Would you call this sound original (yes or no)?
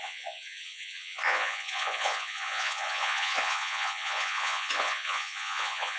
no